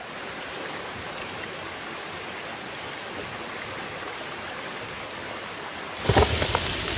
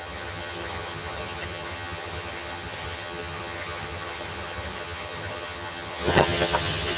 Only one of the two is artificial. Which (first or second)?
second